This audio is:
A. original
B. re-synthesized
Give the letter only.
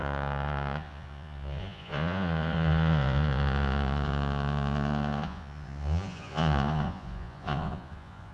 B